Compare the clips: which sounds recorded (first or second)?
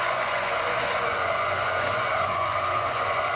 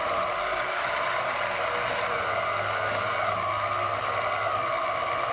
second